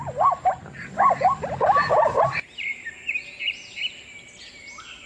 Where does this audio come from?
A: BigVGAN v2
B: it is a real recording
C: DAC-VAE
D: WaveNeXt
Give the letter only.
B